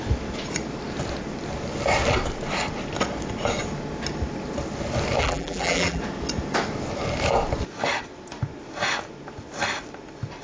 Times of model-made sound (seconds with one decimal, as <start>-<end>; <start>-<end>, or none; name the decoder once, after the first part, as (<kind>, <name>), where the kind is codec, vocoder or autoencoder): 5.2-6.0 (vocoder, BigVGAN v2)